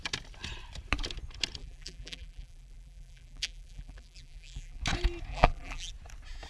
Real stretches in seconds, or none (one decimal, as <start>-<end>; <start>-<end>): 0.0-1.6; 4.8-5.3; 5.9-6.5